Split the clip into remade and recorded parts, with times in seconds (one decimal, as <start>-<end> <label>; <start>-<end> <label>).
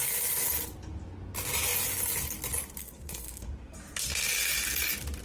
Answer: 0.0-2.8 recorded; 2.8-3.5 remade; 3.5-5.2 recorded